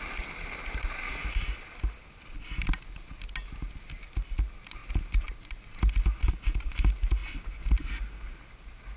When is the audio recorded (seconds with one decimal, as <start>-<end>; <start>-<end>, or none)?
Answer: 0.0-9.0